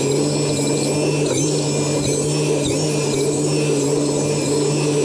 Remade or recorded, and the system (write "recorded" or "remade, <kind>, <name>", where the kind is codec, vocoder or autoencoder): recorded